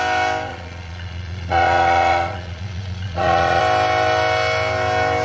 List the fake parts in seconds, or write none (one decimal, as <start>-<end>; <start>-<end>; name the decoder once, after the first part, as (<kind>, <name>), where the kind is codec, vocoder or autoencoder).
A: 0.5-3.6 (vocoder, Vocos)